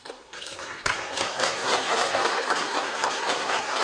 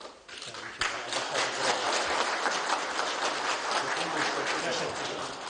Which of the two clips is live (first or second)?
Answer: second